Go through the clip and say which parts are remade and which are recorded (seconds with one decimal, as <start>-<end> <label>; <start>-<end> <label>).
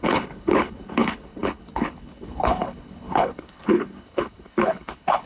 0.0-5.3 remade